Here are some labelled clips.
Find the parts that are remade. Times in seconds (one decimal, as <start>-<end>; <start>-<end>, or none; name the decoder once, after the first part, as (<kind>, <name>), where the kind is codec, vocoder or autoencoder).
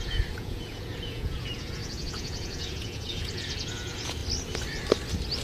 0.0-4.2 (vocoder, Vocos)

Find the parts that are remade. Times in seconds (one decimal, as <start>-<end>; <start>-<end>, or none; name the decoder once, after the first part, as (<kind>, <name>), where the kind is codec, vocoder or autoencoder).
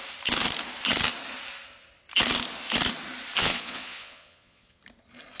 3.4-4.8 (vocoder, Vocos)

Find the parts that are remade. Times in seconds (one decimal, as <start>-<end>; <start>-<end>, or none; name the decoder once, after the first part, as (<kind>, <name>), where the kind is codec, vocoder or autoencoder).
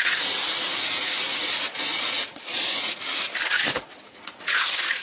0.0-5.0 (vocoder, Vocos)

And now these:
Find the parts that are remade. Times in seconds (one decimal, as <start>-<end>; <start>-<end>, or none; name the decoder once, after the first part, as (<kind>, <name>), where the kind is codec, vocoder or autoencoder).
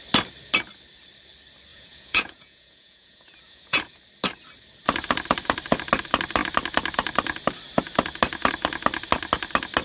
1.7-4.0 (vocoder, Vocos)